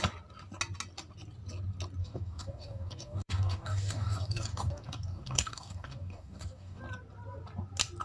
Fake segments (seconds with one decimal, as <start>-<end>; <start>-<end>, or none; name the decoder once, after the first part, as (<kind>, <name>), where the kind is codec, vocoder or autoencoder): 2.0-6.8 (codec, DAC)